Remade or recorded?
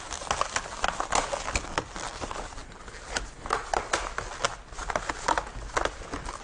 recorded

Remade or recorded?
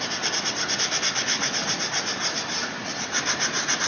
recorded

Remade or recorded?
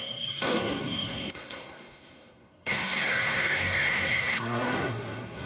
remade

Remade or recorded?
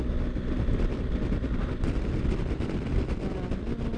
recorded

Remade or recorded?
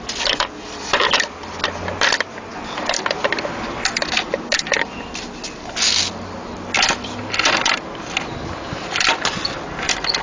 recorded